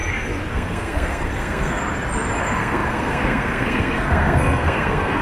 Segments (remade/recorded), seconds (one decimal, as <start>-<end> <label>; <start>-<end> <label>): 0.0-0.5 recorded; 0.5-1.8 remade; 1.8-2.4 recorded; 2.4-5.2 remade